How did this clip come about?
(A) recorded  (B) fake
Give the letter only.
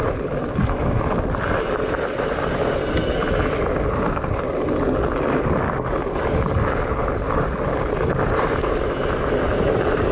A